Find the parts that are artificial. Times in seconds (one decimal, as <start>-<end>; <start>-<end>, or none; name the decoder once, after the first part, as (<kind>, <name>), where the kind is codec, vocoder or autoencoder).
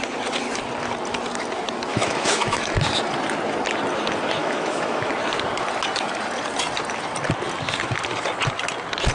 1.9-2.7 (autoencoder, DAC-VAE); 4.4-5.1